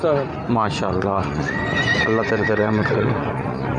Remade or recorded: remade